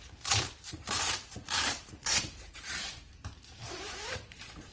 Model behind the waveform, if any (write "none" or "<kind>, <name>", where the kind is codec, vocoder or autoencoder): vocoder, BigVGAN v2